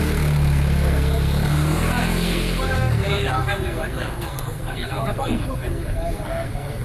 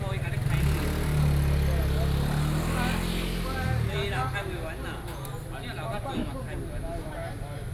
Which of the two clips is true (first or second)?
second